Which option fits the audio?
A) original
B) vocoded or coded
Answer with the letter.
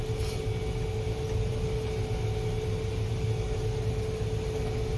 A